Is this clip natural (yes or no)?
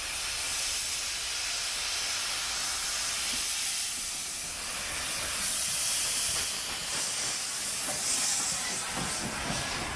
yes